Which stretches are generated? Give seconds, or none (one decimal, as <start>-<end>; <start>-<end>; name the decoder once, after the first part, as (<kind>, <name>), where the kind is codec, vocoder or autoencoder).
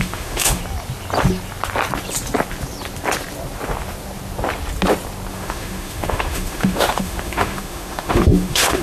0.0-0.6 (autoencoder, DAC-VAE); 5.3-8.8